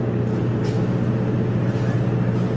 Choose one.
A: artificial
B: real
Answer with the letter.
B